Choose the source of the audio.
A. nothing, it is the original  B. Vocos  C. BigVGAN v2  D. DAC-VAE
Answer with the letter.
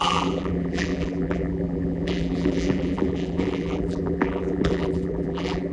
C